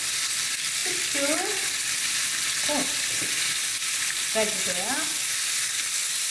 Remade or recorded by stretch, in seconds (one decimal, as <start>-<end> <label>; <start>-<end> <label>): 0.0-6.3 recorded